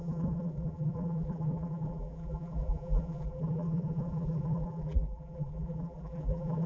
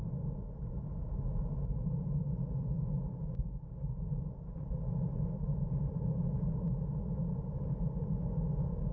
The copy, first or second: first